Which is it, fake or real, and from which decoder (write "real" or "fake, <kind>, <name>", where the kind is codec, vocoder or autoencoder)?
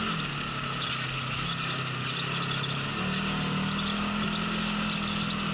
real